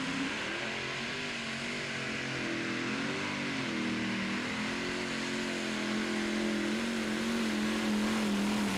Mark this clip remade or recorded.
recorded